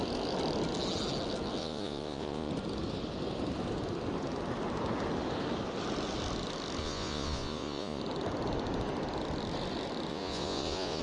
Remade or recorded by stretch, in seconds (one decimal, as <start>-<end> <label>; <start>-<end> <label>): 0.0-1.6 recorded; 1.6-2.5 remade; 2.5-6.8 recorded; 6.8-8.0 remade; 8.0-10.1 recorded; 10.1-11.0 remade